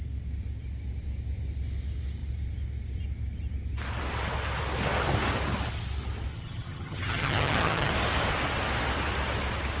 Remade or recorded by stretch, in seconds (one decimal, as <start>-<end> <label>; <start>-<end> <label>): 0.0-6.3 recorded; 6.3-7.9 remade; 7.9-9.8 recorded